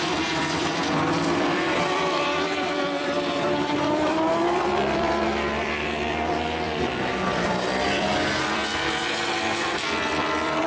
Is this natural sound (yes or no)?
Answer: no